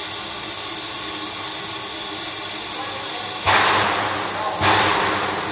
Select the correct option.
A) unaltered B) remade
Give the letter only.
A